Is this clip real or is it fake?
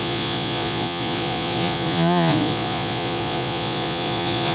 fake